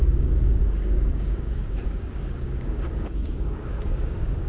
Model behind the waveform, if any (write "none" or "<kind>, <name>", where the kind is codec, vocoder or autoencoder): codec, DAC